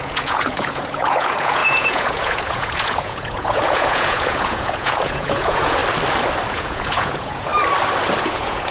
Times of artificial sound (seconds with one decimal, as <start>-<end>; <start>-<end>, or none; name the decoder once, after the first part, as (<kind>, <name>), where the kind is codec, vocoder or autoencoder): 0.0-5.8 (vocoder, Vocos); 6.5-7.5; 8.2-8.7